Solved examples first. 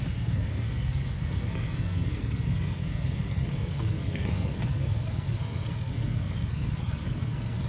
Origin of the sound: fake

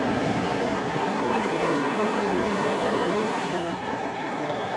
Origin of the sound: fake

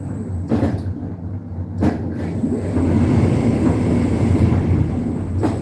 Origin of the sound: real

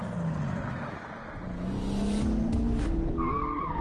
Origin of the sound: real